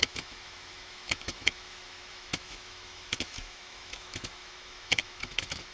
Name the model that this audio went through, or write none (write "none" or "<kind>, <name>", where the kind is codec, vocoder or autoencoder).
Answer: autoencoder, DAC-VAE